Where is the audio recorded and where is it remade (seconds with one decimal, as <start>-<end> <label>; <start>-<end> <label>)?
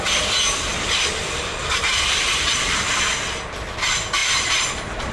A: 0.0-0.7 recorded; 0.7-2.9 remade; 2.9-4.2 recorded; 4.2-5.1 remade